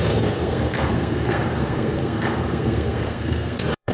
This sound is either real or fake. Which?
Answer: fake